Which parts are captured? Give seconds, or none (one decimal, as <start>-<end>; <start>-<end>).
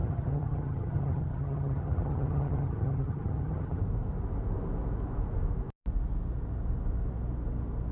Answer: 3.8-7.9